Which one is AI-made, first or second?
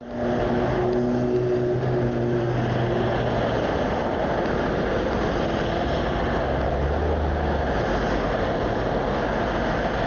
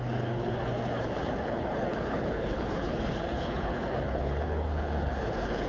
second